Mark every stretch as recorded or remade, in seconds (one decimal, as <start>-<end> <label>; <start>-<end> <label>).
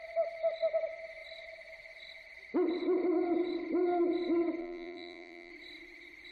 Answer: 0.0-4.6 recorded; 4.6-5.5 remade; 5.5-6.3 recorded